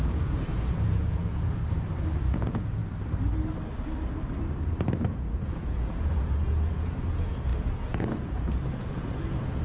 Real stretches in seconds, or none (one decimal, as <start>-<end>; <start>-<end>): 1.6-2.2; 2.8-5.1